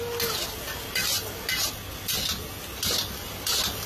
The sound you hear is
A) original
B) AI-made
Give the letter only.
A